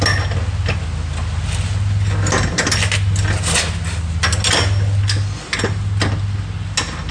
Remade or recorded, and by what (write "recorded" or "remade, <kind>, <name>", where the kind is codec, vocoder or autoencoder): recorded